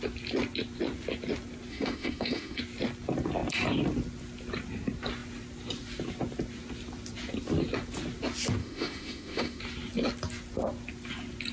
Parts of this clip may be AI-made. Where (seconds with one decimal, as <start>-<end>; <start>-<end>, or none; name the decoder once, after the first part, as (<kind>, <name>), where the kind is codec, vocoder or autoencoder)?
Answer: 1.7-2.6 (autoencoder, DAC-VAE); 8.6-9.6